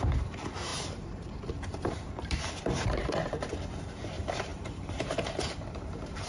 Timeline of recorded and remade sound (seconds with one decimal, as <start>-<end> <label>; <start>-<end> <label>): 0.0-6.3 remade

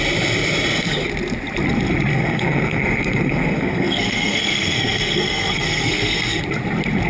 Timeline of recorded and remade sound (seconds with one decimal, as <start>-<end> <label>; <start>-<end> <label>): 0.0-2.1 recorded; 2.1-6.4 remade; 6.4-7.1 recorded

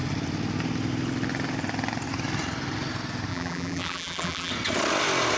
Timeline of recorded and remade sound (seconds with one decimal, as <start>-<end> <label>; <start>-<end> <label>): 0.0-3.3 recorded; 3.3-4.5 remade; 4.5-5.4 recorded

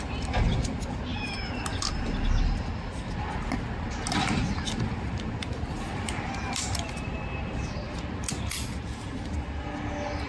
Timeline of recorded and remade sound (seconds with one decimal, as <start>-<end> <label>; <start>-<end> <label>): 0.0-10.3 recorded

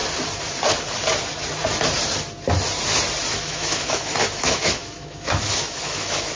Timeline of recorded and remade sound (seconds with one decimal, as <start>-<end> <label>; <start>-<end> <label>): 0.0-3.3 recorded; 3.3-6.4 remade

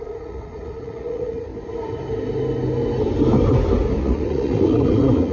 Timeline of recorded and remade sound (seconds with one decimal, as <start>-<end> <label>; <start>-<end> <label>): 0.0-1.5 remade; 1.5-4.0 recorded; 4.0-5.3 remade

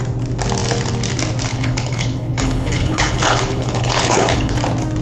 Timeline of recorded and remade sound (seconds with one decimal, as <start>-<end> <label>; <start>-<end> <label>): 0.0-1.5 recorded; 1.5-4.5 remade; 4.5-5.0 recorded